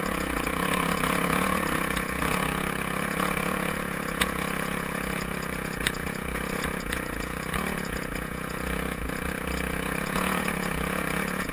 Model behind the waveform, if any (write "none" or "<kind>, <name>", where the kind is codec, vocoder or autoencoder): vocoder, Vocos